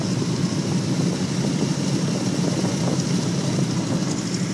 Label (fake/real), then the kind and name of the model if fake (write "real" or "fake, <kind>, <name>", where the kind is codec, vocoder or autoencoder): real